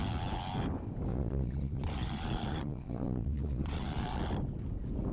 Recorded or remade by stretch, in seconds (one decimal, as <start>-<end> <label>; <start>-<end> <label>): 0.0-1.1 recorded; 1.1-4.2 remade; 4.2-5.1 recorded